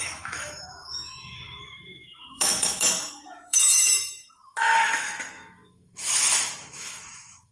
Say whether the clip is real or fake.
fake